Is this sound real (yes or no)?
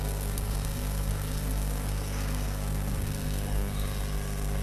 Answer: no